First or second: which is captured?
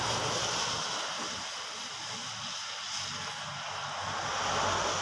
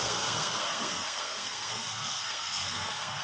first